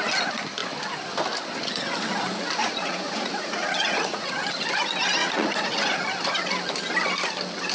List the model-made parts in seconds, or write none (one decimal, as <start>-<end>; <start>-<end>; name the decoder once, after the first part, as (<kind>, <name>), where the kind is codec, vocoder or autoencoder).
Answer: 2.6-4.4 (vocoder, Vocos); 5.2-6.0

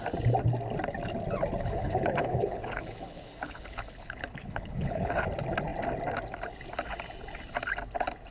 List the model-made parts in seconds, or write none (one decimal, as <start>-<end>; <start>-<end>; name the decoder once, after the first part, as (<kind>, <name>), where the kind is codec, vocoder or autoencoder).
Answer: 1.6-5.2 (codec, HILCodec)

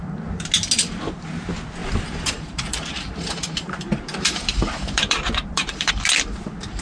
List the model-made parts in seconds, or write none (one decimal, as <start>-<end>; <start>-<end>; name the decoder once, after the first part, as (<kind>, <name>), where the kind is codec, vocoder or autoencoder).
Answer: 1.8-5.9 (vocoder, BigVGAN v2)

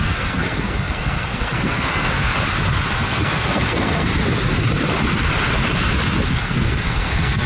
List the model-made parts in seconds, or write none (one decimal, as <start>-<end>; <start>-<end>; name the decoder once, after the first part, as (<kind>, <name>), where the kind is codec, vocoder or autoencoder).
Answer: 0.0-2.3 (codec, SNAC); 3.0-4.1; 6.3-7.5

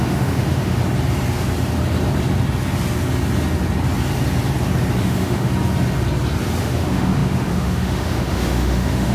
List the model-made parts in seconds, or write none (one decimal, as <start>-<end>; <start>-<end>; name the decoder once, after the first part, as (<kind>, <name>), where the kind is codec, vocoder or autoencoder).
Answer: 0.0-0.8 (autoencoder, DAC-VAE); 5.0-5.5; 6.6-9.1

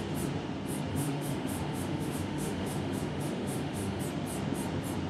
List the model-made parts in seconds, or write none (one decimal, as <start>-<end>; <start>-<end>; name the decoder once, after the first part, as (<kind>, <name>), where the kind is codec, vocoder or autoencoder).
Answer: 0.9-4.0 (autoencoder, DAC-VAE)

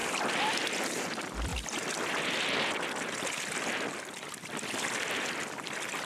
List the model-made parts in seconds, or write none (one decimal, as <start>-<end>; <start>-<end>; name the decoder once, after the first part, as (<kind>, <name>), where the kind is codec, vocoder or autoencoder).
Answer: none

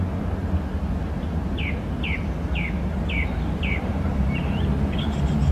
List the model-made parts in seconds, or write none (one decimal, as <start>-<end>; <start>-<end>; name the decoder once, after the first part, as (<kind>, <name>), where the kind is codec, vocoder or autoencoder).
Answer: 3.9-5.5 (vocoder, BigVGAN v2)